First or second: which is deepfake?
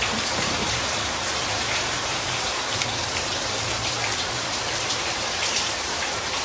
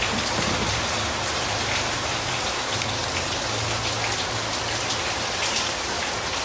first